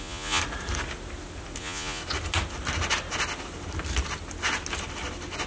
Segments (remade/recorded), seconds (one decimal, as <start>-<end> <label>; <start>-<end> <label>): 0.0-0.4 remade; 0.4-1.6 recorded; 1.6-2.0 remade; 2.0-5.5 recorded